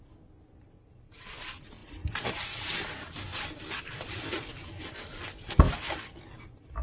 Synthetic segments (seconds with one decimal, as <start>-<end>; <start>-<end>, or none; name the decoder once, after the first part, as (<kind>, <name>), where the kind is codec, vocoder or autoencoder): 1.8-5.9 (vocoder, BigVGAN v2)